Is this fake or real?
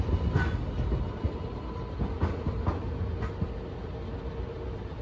real